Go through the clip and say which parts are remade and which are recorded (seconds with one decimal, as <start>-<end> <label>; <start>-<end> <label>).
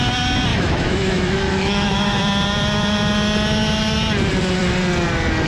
0.0-0.5 recorded; 0.5-2.2 remade; 2.2-5.5 recorded